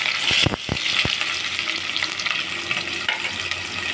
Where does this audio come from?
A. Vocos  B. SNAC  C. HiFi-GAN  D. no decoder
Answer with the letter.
D